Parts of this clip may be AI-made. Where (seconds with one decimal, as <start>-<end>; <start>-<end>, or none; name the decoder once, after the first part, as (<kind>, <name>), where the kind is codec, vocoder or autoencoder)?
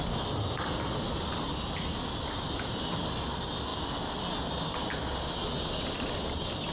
none